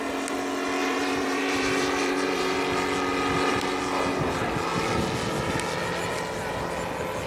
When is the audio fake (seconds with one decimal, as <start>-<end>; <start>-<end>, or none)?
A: 0.8-2.6